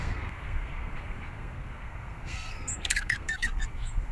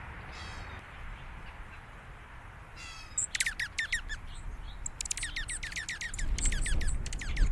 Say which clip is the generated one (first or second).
first